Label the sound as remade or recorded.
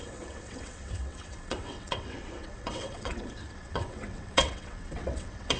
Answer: remade